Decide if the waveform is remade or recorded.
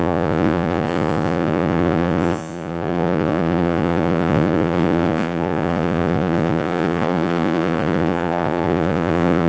remade